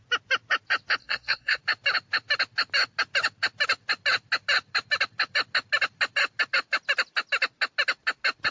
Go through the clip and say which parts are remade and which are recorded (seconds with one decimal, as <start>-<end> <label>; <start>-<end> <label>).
0.0-1.0 recorded; 1.0-1.6 remade; 1.6-8.5 recorded